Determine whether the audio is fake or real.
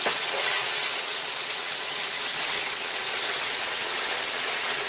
fake